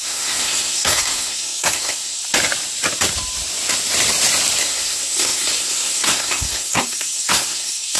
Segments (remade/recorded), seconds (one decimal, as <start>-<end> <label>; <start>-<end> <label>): 0.0-2.2 remade; 2.2-4.6 recorded; 4.6-8.0 remade